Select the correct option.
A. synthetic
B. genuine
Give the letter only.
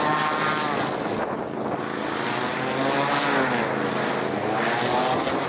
B